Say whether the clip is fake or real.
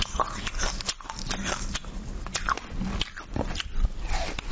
real